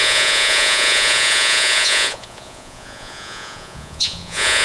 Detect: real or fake fake